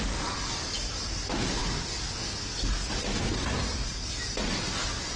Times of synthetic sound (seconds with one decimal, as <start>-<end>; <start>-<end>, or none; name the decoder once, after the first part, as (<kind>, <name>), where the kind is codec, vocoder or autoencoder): 3.7-4.5 (vocoder, BigVGAN v2)